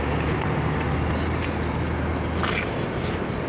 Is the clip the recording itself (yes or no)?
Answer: yes